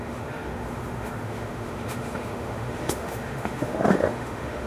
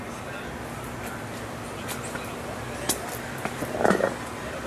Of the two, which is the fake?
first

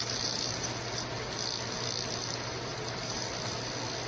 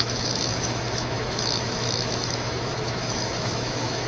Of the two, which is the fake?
second